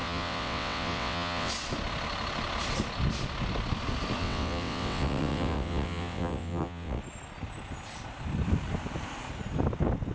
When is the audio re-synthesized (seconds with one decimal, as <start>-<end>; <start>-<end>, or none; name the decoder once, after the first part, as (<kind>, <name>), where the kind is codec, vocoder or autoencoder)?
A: 0.0-1.5 (vocoder, WaveNeXt); 4.2-7.0